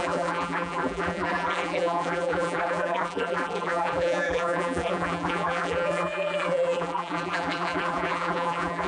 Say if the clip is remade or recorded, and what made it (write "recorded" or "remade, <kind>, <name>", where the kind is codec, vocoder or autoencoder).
remade, vocoder, BigVGAN v2